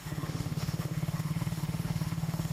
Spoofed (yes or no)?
yes